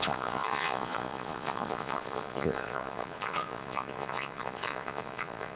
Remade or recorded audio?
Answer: remade